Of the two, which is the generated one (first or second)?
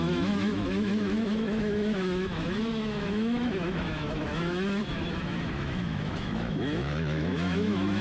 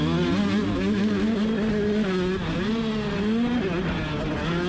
first